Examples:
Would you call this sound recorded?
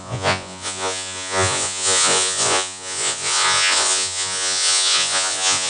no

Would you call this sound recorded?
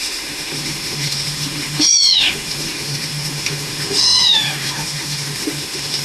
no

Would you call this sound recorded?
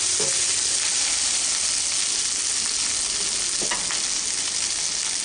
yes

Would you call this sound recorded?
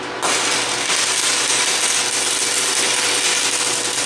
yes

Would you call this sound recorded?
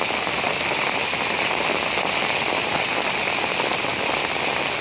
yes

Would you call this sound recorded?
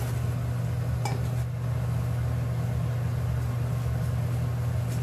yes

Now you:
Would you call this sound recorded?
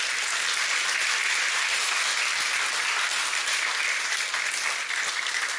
yes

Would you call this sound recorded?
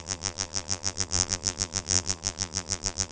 no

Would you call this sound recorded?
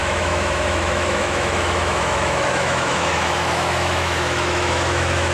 no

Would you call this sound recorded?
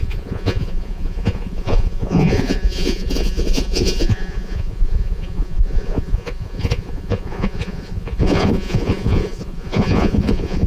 no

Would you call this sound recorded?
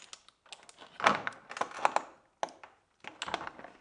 yes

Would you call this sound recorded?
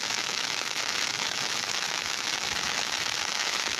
no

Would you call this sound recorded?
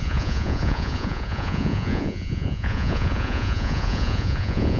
no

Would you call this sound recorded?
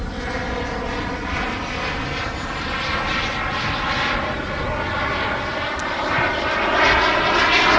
yes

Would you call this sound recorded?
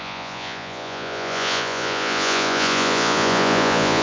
no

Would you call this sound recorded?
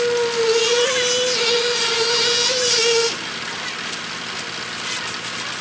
yes